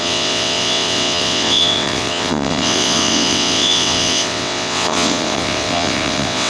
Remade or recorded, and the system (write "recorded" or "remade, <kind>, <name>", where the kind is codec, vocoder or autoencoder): remade, vocoder, WaveNeXt